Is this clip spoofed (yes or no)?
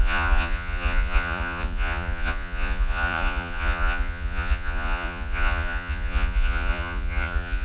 yes